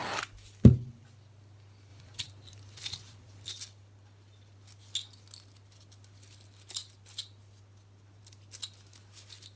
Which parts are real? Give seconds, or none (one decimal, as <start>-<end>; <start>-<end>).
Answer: 0.0-1.9; 3.5-9.6